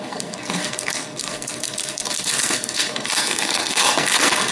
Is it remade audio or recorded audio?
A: remade